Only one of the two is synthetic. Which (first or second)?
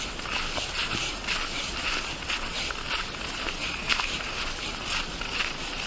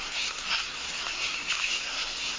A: second